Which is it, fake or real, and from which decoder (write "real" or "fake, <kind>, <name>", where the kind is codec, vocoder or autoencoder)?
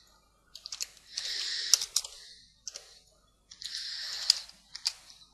real